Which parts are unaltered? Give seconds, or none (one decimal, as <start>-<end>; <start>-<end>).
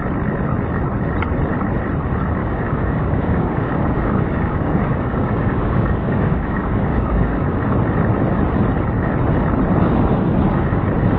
0.0-2.4; 7.5-11.2